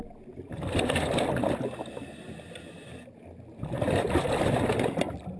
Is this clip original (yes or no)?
yes